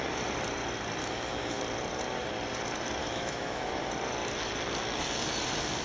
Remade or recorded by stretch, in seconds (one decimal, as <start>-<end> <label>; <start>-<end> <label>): 0.0-1.0 recorded; 1.0-1.6 remade; 1.6-3.0 recorded; 3.0-3.7 remade; 3.7-5.8 recorded